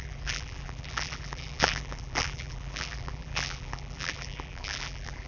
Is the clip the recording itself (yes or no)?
no